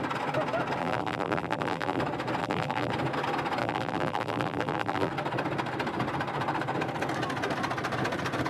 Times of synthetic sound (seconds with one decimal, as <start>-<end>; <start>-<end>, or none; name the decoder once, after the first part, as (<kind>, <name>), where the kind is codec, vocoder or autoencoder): 0.8-2.0 (vocoder, BigVGAN v2); 2.4-2.9; 3.6-5.1